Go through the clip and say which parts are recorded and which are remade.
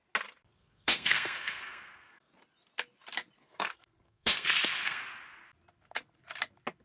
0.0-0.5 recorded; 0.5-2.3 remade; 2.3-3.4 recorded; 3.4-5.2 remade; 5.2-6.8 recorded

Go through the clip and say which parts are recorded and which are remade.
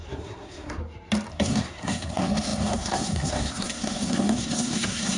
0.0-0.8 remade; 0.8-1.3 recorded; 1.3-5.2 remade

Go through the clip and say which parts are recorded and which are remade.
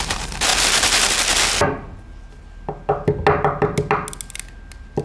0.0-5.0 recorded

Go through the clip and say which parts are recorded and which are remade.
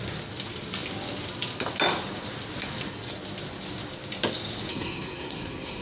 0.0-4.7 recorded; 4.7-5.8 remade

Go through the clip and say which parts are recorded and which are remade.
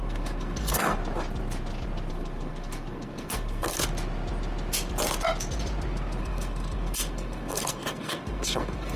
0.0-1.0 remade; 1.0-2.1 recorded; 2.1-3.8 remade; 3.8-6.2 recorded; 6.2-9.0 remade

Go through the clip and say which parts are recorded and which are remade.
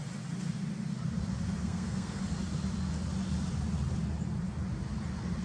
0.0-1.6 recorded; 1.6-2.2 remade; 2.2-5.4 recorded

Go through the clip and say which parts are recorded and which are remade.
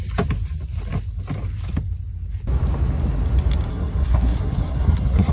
0.0-3.7 recorded; 3.7-5.3 remade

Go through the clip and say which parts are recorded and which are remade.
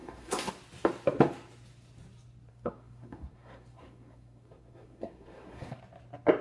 0.0-0.5 remade; 0.5-2.5 recorded; 2.5-5.8 remade; 5.8-6.4 recorded